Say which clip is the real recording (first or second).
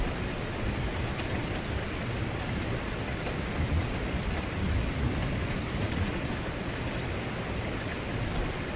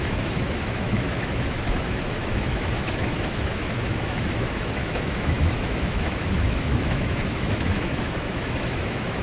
first